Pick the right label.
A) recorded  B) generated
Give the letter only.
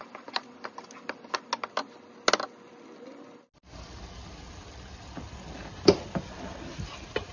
A